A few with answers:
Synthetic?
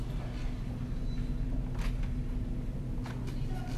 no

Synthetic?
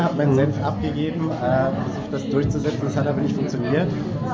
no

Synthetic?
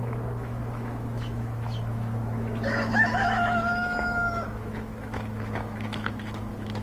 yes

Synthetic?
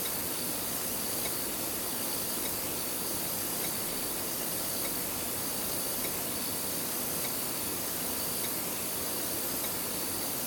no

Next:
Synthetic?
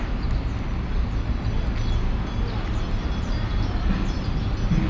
no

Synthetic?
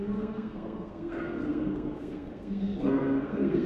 yes